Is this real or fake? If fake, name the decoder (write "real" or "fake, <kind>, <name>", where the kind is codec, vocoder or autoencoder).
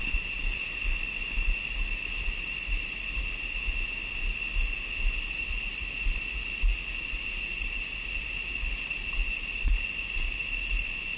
real